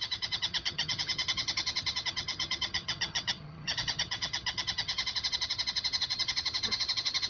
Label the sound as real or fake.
fake